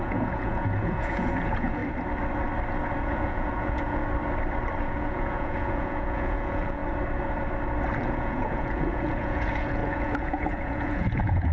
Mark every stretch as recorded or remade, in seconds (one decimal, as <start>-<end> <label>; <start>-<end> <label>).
0.0-1.8 remade; 1.8-3.0 recorded; 3.0-4.0 remade; 4.0-4.8 recorded; 4.8-6.8 remade; 6.8-8.0 recorded; 8.0-11.5 remade